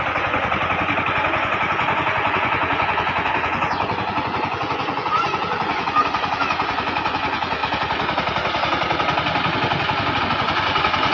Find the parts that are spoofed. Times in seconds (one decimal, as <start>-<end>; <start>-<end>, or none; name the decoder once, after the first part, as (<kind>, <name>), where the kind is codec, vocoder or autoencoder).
0.0-7.6 (vocoder, Vocos); 10.2-11.1